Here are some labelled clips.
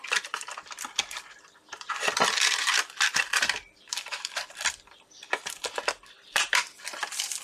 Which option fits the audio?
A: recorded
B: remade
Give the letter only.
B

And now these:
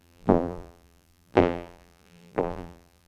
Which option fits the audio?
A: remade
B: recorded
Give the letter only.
A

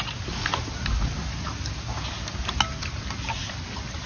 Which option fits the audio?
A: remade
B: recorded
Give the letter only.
B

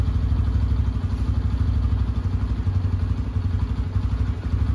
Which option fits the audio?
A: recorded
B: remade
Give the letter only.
A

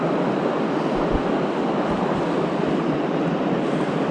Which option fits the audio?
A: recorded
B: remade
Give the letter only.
A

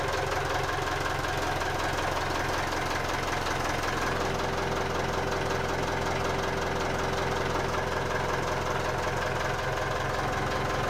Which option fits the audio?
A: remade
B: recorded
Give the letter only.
B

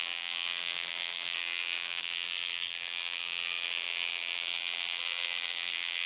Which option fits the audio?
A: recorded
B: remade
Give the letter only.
B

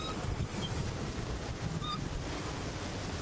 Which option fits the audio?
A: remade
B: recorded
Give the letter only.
A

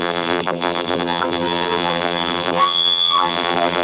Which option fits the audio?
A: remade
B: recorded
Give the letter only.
A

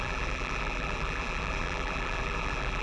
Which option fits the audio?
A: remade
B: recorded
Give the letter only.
A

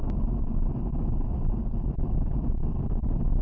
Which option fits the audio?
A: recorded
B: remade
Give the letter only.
A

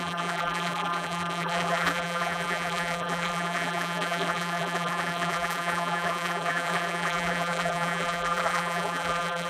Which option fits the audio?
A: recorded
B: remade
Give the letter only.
B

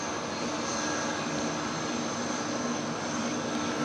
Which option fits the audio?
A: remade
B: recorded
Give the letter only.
B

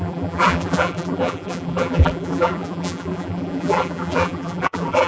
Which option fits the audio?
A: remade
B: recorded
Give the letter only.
A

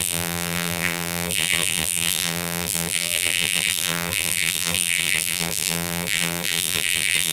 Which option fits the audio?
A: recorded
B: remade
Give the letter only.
B